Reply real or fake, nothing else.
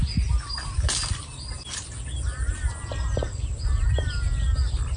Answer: real